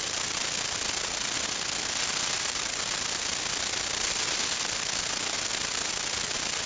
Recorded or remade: recorded